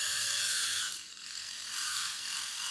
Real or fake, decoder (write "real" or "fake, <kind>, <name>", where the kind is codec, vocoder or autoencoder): fake, codec, SNAC